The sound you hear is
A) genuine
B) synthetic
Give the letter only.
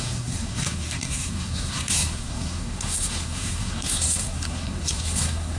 B